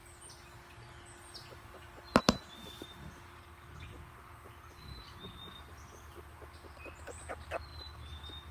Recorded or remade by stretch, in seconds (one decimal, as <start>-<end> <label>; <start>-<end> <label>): 0.0-8.5 recorded